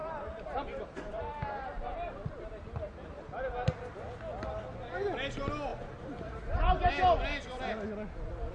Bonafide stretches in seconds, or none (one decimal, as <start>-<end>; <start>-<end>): 1.2-5.7; 6.9-8.5